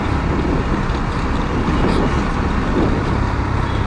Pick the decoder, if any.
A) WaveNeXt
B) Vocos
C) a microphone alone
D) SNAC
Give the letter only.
C